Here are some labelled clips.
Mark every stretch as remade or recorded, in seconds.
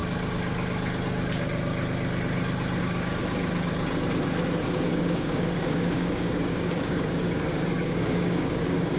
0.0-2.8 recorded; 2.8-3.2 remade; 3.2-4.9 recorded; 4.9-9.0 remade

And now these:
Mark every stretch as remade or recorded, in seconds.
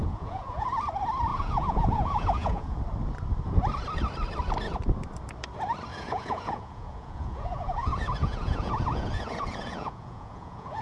0.0-0.7 remade; 0.7-1.3 recorded; 1.3-2.8 remade; 2.8-5.9 recorded; 5.9-10.8 remade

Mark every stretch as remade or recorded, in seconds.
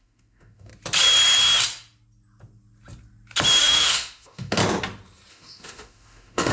0.0-0.7 remade; 0.7-3.6 recorded; 3.6-4.6 remade; 4.6-5.3 recorded; 5.3-6.5 remade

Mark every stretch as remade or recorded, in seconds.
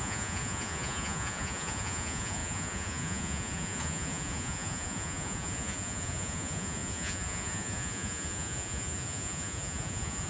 0.0-10.3 remade